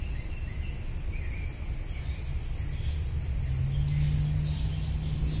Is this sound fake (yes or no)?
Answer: no